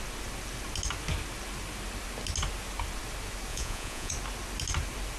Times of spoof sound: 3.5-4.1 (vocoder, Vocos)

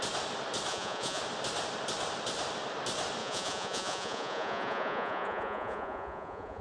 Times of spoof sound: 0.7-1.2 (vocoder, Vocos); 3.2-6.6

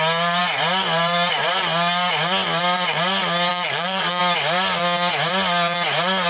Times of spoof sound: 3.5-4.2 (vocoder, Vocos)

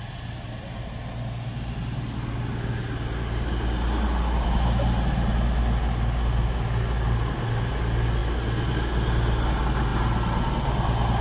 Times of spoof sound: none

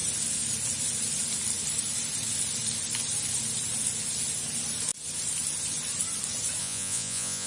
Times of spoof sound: 6.6-7.5 (vocoder, Vocos)

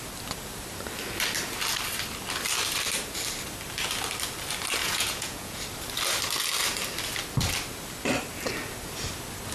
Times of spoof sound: 4.8-5.6 (vocoder, Vocos)

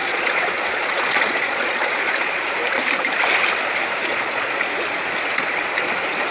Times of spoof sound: 0.0-2.4 (vocoder, Vocos); 4.1-5.0